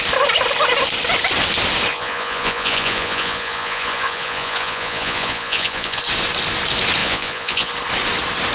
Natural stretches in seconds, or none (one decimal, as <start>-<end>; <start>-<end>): 0.0-1.9; 6.0-7.0; 7.7-8.5